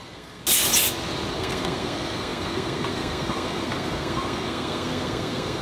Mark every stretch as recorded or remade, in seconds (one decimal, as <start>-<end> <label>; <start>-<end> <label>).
0.0-0.4 remade; 0.4-1.3 recorded; 1.3-5.6 remade

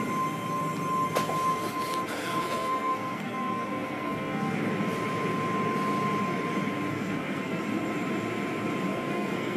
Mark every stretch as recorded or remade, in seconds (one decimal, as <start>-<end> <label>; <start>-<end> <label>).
0.0-2.2 recorded; 2.2-4.6 remade; 4.6-6.9 recorded; 6.9-7.6 remade; 7.6-8.9 recorded; 8.9-9.6 remade

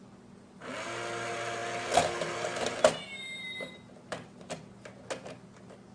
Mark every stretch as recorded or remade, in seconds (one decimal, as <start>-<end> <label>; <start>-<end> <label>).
0.0-5.9 recorded